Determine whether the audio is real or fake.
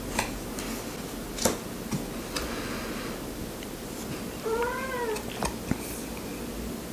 real